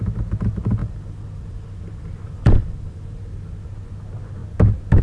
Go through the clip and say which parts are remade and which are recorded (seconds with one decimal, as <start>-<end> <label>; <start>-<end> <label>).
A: 0.0-0.8 recorded; 0.8-3.2 remade; 3.2-5.0 recorded